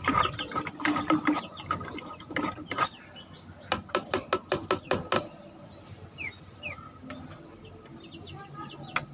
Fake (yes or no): no